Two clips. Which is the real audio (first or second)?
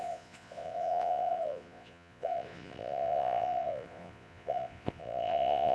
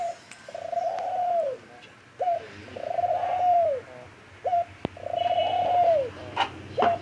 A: second